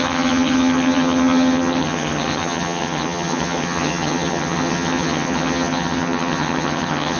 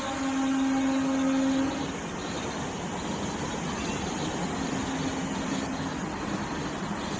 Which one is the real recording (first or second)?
second